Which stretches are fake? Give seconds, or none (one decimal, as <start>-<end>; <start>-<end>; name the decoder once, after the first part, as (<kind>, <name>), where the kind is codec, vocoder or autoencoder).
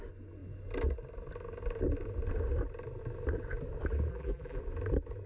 4.1-4.6 (vocoder, BigVGAN v2)